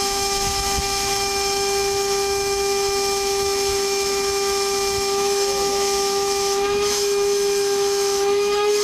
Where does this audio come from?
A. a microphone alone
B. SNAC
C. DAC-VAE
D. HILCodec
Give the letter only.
C